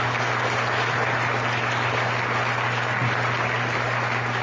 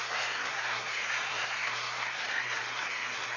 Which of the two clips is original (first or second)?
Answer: first